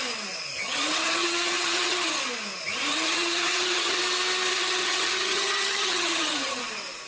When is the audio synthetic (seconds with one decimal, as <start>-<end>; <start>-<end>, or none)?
0.6-2.2; 2.9-4.0; 4.5-6.6